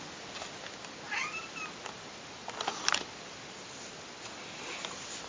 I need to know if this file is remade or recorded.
recorded